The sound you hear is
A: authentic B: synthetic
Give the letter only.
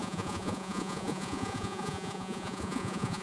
B